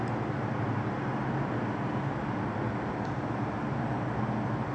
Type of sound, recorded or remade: recorded